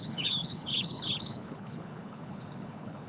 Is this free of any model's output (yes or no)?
no